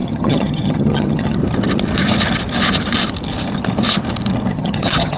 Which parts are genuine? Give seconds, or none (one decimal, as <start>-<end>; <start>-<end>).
1.4-4.5